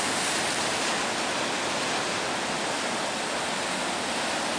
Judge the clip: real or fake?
real